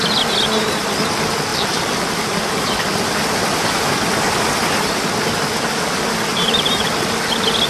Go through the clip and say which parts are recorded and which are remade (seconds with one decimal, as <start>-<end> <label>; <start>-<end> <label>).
0.0-1.5 recorded; 1.5-2.2 remade; 2.2-6.3 recorded; 6.3-7.3 remade; 7.3-7.7 recorded